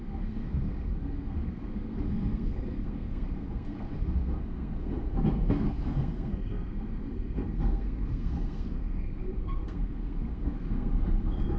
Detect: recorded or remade remade